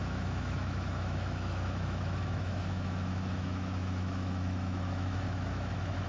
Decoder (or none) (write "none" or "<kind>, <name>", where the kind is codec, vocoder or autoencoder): autoencoder, DAC-VAE